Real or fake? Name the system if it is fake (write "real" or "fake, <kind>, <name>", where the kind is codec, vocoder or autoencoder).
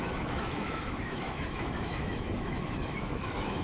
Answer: fake, autoencoder, DAC-VAE